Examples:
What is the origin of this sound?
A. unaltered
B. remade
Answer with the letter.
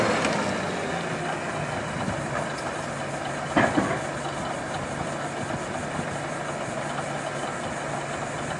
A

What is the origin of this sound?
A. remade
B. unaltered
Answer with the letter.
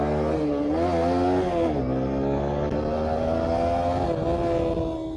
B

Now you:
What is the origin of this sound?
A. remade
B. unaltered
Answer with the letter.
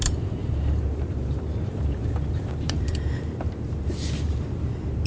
A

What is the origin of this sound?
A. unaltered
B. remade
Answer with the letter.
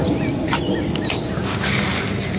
A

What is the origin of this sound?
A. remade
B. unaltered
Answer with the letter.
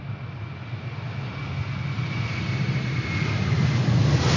B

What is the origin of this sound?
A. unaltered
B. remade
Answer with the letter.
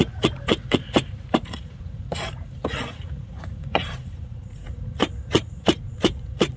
B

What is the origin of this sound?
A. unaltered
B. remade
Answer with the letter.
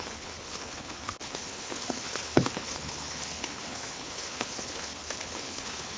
B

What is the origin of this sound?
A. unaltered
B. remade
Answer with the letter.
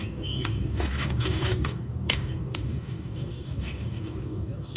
B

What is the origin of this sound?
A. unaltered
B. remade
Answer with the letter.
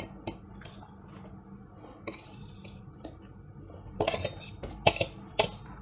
A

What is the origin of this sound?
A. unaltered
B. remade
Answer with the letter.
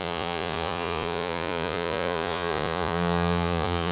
B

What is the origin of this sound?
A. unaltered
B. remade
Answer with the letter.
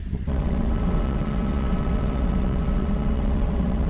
B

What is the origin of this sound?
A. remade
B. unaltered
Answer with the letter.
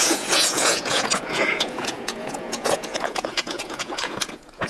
A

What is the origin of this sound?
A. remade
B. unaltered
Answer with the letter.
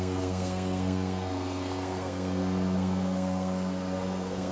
A